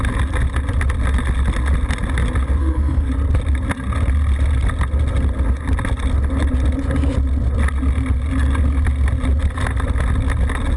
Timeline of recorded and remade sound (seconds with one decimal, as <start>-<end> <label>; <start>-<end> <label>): 0.0-2.6 recorded; 2.6-3.1 remade; 3.1-10.8 recorded